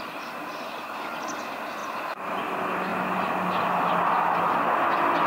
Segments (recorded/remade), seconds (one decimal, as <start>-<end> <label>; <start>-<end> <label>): 0.0-1.8 recorded; 1.8-2.4 remade; 2.4-5.3 recorded